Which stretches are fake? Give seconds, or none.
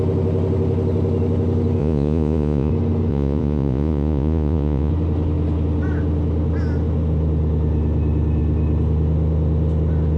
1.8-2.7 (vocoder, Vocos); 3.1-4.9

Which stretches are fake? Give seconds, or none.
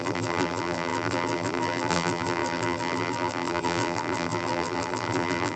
0.0-5.6 (vocoder, BigVGAN v2)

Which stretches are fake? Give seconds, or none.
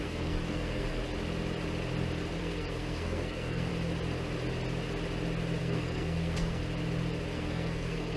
0.0-1.0 (codec, SNAC); 2.4-3.7; 5.6-6.6; 7.3-8.2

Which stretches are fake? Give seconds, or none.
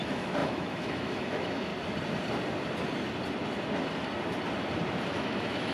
0.0-1.7 (autoencoder, DAC-VAE); 5.1-5.7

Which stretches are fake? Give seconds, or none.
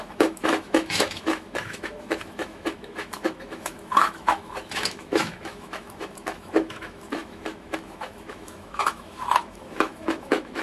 0.0-10.6 (autoencoder, DAC-VAE)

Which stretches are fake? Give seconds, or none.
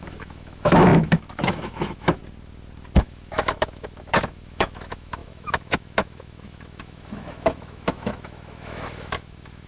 0.0-2.2 (autoencoder, DAC-VAE); 3.0-9.7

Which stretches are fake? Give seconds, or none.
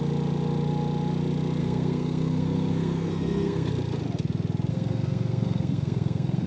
1.6-3.7 (codec, SNAC); 4.7-6.5